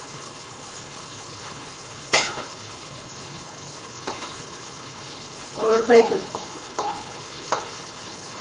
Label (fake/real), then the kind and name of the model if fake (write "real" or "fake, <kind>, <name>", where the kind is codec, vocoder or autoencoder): fake, codec, HILCodec